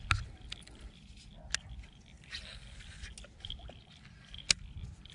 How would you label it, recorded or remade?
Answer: recorded